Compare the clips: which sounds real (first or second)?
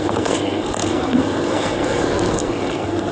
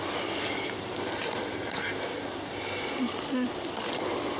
second